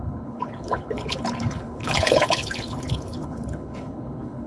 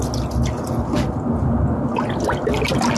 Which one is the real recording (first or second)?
second